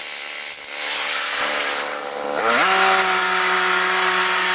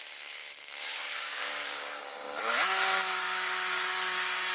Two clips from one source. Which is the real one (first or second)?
first